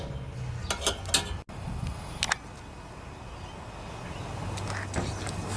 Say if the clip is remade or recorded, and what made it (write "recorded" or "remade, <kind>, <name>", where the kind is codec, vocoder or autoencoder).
recorded